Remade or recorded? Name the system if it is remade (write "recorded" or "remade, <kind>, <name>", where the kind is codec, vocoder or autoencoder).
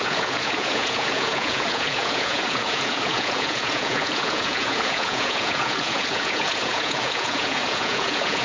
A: remade, vocoder, Vocos